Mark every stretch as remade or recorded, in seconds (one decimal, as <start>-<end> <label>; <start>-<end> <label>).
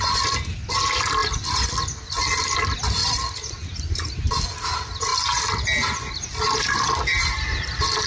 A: 0.0-1.2 recorded; 1.2-1.8 remade; 1.8-3.0 recorded; 3.0-3.9 remade; 3.9-8.1 recorded